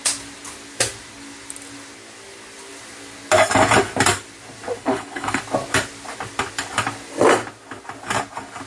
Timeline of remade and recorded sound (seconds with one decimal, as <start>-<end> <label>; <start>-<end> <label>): 0.0-4.8 recorded; 4.8-5.4 remade; 5.4-8.7 recorded